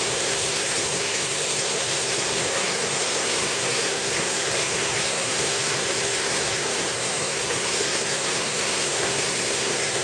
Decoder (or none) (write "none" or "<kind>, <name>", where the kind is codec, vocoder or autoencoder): codec, SNAC